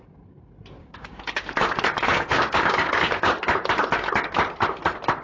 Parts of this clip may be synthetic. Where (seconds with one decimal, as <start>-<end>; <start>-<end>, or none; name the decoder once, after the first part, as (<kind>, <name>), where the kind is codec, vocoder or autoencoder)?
0.8-3.5 (codec, DAC)